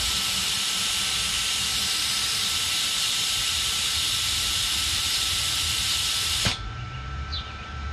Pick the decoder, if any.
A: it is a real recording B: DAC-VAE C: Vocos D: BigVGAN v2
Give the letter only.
D